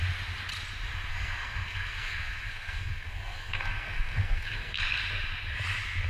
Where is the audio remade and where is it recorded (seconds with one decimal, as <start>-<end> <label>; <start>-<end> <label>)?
0.0-1.1 recorded; 1.1-4.8 remade; 4.8-6.1 recorded